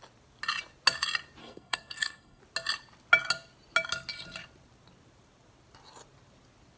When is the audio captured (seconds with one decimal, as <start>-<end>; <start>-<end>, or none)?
0.0-1.4; 2.4-6.8